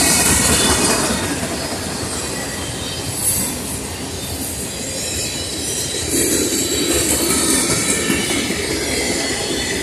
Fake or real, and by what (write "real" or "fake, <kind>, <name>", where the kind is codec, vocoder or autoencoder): real